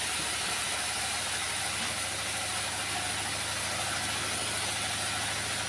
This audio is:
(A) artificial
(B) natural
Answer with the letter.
B